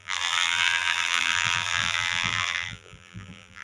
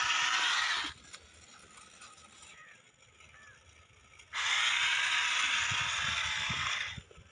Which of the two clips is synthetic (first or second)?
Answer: first